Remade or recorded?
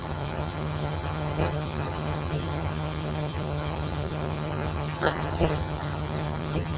remade